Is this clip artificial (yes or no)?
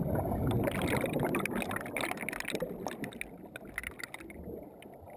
no